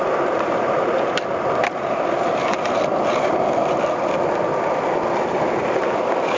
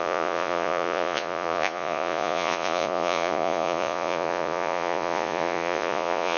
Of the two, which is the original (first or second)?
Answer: first